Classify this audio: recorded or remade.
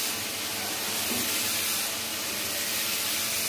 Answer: recorded